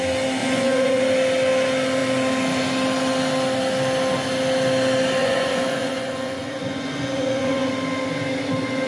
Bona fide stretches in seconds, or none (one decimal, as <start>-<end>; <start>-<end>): 0.0-0.4; 1.0-5.2; 7.7-8.9